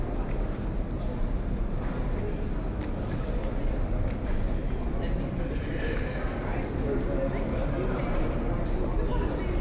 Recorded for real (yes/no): yes